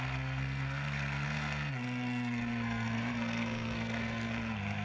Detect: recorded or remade remade